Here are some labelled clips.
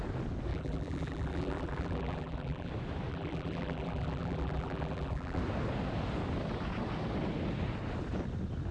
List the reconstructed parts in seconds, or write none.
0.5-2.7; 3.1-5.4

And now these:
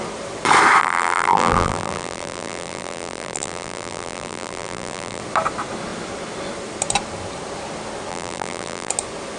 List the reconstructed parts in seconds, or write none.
0.8-5.2; 8.1-8.9

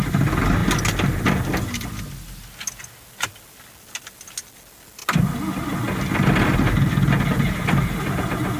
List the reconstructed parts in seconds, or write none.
none

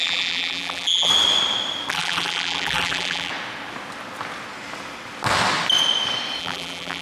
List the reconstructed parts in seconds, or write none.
0.0-1.1; 1.9-3.3; 6.4-7.0

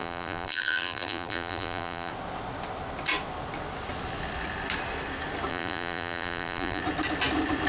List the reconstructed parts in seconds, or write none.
0.0-2.1; 5.5-6.8

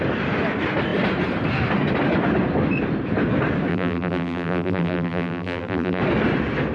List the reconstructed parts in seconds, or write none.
3.7-6.0

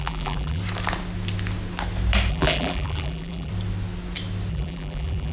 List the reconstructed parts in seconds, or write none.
0.0-0.6; 2.3-3.5; 4.5-5.3

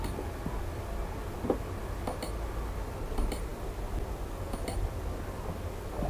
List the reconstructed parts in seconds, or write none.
none